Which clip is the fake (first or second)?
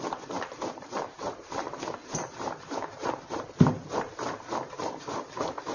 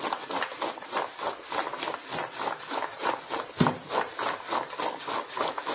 first